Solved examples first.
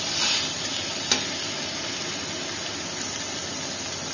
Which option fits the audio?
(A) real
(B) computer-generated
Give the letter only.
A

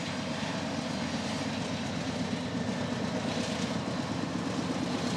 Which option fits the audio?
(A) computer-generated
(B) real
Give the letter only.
A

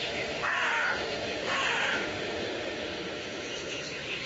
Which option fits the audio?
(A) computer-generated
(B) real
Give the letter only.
A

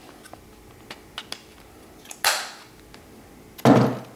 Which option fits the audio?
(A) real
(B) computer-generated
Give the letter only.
A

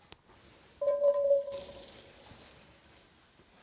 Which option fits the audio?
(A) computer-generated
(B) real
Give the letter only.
B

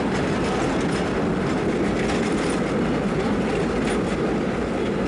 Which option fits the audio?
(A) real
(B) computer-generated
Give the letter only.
A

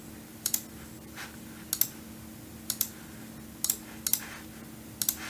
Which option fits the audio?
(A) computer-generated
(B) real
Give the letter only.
B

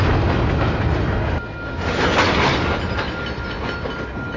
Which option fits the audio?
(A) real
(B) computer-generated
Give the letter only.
A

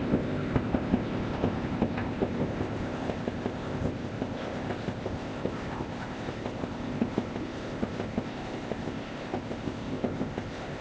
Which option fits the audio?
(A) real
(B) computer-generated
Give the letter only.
B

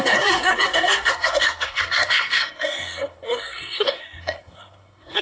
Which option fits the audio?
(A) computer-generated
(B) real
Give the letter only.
A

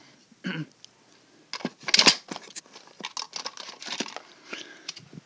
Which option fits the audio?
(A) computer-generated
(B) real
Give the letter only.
B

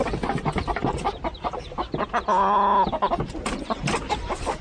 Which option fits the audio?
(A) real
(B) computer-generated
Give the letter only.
A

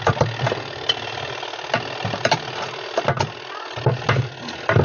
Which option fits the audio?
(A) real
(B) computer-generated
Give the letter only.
A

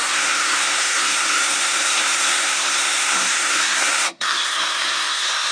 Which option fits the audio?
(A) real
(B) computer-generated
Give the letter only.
B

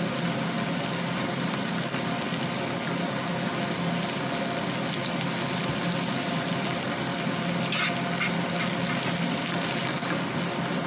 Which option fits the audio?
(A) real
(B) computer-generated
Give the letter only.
A